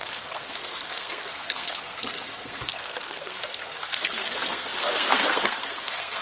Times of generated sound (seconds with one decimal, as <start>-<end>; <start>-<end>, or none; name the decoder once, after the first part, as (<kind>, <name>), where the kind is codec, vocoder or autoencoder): 0.0-6.2 (codec, SNAC)